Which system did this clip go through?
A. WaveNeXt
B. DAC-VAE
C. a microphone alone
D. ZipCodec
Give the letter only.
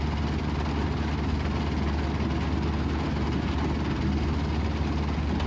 C